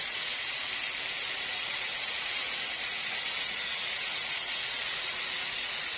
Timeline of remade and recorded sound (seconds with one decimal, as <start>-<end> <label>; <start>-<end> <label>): 0.0-0.7 remade; 0.7-1.3 recorded; 1.3-6.0 remade